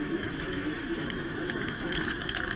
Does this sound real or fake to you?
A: fake